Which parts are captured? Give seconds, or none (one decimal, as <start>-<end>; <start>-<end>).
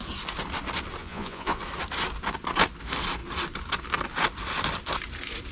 0.0-1.0; 1.6-5.5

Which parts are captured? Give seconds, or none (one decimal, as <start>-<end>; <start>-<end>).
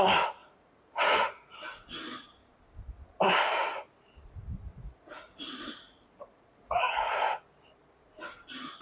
0.0-0.4; 1.5-4.7; 7.3-8.8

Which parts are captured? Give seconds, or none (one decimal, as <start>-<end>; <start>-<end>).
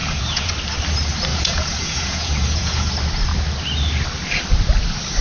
0.5-1.3; 2.9-5.2